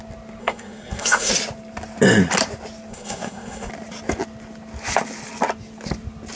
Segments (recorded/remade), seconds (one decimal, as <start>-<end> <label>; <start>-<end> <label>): 0.0-0.4 recorded; 0.4-1.3 remade; 1.3-2.9 recorded; 2.9-3.7 remade; 3.7-6.4 recorded